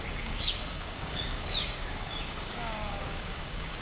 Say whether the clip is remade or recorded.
remade